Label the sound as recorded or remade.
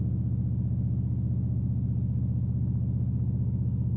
recorded